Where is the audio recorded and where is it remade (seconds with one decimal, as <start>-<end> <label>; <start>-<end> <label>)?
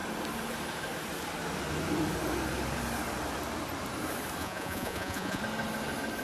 0.0-4.4 recorded; 4.4-5.4 remade; 5.4-6.2 recorded